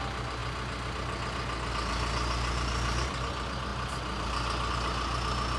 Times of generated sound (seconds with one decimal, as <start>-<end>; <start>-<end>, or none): none